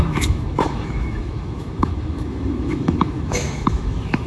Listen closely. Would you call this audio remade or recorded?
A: remade